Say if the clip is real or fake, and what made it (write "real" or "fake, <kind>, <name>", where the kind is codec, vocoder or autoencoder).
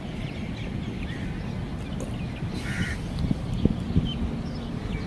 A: real